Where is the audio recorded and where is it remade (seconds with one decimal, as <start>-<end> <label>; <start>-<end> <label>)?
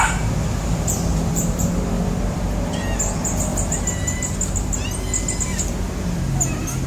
0.0-1.1 recorded; 1.1-1.8 remade; 1.8-6.9 recorded